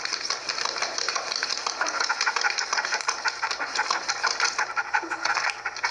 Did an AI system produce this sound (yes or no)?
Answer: no